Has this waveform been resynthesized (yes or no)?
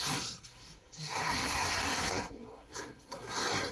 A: yes